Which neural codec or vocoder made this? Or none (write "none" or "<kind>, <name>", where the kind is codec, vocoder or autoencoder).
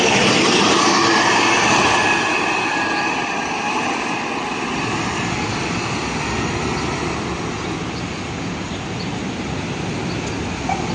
none